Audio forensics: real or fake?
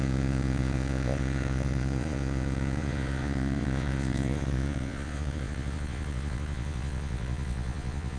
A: fake